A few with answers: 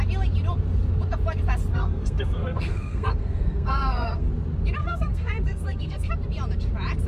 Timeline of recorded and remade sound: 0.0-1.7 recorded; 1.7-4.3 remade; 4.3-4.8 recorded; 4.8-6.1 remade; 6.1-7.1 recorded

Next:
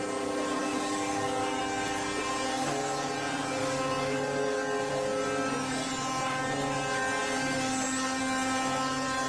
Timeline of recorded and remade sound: 0.0-0.6 recorded; 0.6-1.6 remade; 1.6-3.6 recorded; 3.6-4.9 remade; 4.9-9.3 recorded

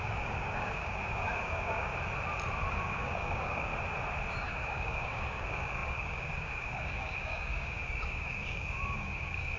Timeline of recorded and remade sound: 0.0-1.9 remade; 1.9-2.8 recorded; 2.8-3.7 remade; 3.7-4.3 recorded; 4.3-9.6 remade

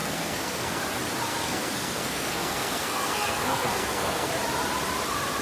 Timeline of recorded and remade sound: 0.0-0.8 remade; 0.8-1.3 recorded; 1.3-4.3 remade; 4.3-5.4 recorded

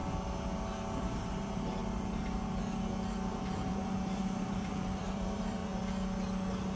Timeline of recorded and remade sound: 0.0-1.0 recorded; 1.0-1.8 remade; 1.8-3.7 recorded; 3.7-5.6 remade; 5.6-6.8 recorded